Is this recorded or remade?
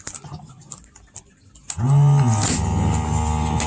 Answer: recorded